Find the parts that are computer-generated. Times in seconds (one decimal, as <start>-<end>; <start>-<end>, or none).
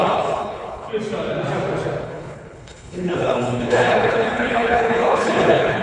0.0-0.9; 2.0-5.8